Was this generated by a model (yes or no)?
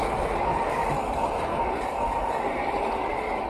no